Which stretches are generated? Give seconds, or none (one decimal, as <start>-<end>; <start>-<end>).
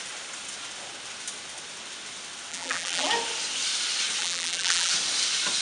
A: 2.5-3.1; 4.2-4.9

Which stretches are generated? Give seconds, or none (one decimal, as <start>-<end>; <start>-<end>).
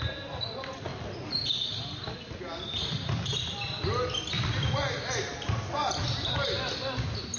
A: none